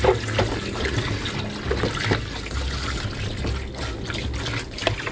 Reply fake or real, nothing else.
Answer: real